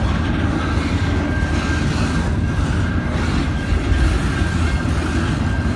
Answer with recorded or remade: recorded